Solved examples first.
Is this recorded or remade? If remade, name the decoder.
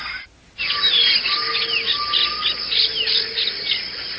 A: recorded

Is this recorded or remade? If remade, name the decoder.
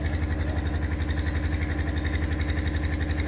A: recorded